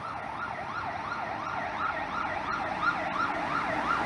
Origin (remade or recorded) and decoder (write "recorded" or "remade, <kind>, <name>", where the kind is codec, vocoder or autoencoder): recorded